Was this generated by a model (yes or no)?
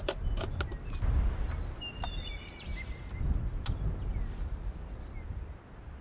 no